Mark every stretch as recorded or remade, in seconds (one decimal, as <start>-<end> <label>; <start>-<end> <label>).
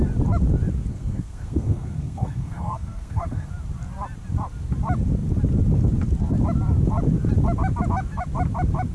0.0-0.9 recorded; 0.9-3.5 remade; 3.5-8.9 recorded